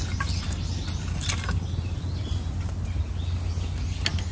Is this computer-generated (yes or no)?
no